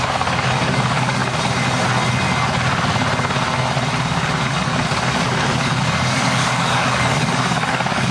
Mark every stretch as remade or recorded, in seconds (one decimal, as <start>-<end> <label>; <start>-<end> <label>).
0.0-1.2 remade; 1.2-4.5 recorded; 4.5-8.1 remade

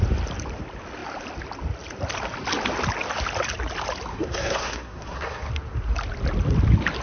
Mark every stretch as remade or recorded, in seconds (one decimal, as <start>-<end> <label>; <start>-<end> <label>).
0.0-4.1 recorded; 4.1-5.5 remade; 5.5-7.0 recorded

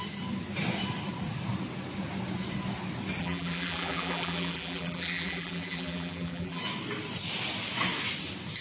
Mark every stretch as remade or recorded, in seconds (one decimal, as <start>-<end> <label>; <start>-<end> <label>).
0.0-3.2 recorded; 3.2-6.6 remade; 6.6-8.6 recorded

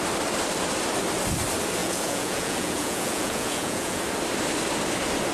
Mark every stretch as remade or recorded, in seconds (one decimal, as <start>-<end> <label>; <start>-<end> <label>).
0.0-1.8 recorded; 1.8-4.0 remade; 4.0-5.3 recorded

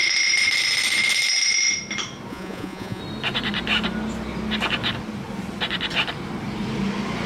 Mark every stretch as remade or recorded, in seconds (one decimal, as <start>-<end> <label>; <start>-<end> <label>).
0.0-2.3 recorded; 2.3-3.0 remade; 3.0-7.3 recorded

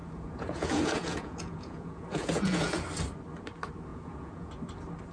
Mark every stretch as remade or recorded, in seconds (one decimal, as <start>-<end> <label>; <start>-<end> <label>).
0.0-2.8 remade; 2.8-3.9 recorded; 3.9-4.5 remade; 4.5-5.1 recorded

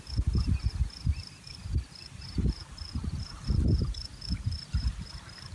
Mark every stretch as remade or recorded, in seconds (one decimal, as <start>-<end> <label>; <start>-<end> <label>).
0.0-5.5 recorded